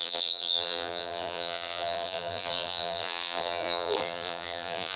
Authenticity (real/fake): fake